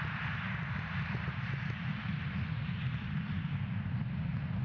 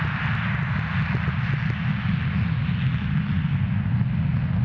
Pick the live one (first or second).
second